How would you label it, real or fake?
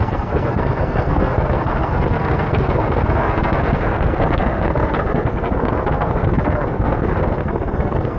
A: fake